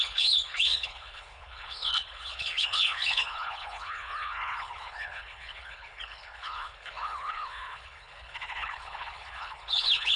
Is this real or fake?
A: fake